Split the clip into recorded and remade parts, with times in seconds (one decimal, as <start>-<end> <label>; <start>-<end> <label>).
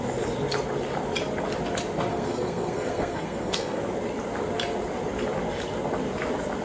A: 0.0-2.1 recorded; 2.1-3.8 remade; 3.8-6.6 recorded